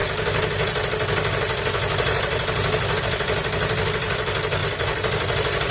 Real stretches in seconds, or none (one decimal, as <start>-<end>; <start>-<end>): 0.0-4.6